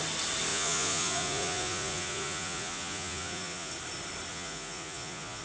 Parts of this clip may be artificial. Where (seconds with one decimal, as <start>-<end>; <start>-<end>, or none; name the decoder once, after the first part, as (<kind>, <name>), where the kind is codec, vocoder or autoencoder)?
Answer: 0.5-3.7 (vocoder, Vocos); 4.3-5.4